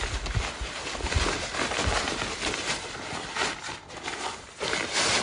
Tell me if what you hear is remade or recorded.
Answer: recorded